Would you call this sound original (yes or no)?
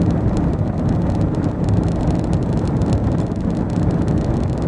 yes